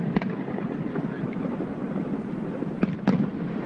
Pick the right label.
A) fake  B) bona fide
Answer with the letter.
A